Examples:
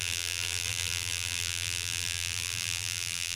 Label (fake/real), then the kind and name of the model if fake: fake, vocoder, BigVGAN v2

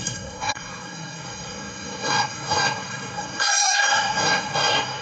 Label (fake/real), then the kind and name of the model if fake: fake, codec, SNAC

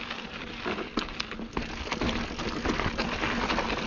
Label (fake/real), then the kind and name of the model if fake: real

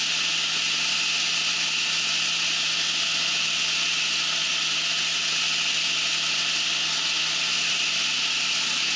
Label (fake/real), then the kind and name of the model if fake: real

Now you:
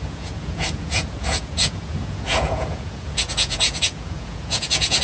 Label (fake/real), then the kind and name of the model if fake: fake, vocoder, Vocos